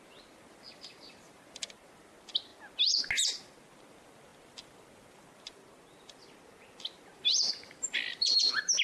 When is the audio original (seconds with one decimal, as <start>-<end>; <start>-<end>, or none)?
0.0-8.8